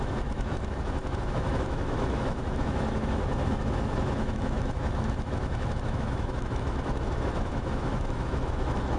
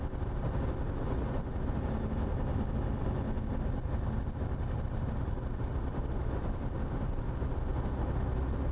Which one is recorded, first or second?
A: second